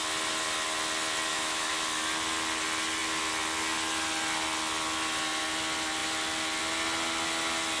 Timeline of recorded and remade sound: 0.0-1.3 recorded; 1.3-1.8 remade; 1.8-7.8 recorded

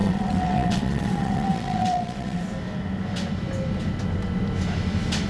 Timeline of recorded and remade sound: 0.0-2.4 remade; 2.4-5.3 recorded

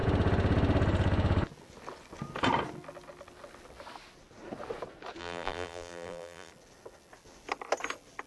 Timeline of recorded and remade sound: 0.0-5.2 recorded; 5.2-6.5 remade; 6.5-8.3 recorded